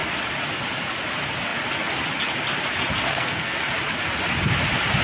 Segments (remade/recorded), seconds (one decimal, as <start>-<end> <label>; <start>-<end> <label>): 0.0-3.1 recorded; 3.1-3.6 remade; 3.6-5.0 recorded